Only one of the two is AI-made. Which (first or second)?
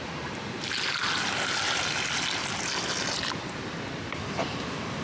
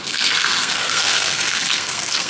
second